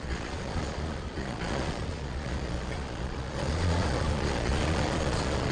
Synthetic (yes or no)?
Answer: yes